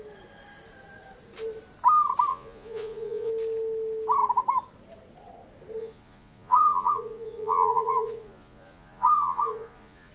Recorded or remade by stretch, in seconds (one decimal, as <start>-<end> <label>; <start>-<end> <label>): 0.0-2.3 recorded; 2.3-3.3 remade; 3.3-5.8 recorded; 5.8-10.1 remade